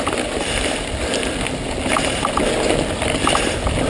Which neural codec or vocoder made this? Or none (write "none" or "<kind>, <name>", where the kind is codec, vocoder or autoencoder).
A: none